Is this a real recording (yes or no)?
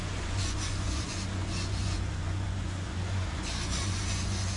no